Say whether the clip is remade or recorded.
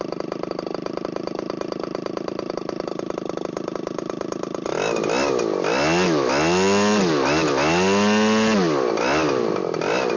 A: recorded